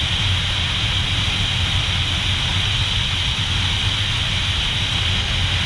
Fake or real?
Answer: real